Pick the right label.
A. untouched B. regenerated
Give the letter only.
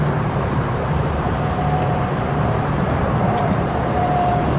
B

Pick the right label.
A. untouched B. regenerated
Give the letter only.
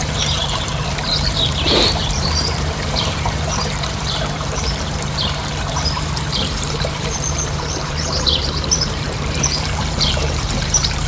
B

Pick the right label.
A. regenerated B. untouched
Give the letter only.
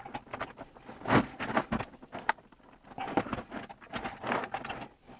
B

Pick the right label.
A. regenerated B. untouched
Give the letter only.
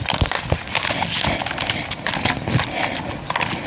B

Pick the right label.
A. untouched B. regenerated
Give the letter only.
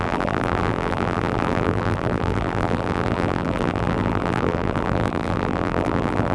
B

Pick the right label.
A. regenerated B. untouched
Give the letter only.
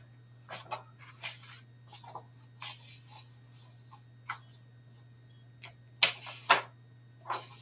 B